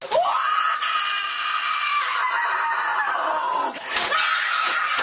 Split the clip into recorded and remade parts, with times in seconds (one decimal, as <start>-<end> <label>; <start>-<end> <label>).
0.0-5.0 recorded